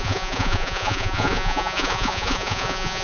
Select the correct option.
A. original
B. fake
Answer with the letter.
B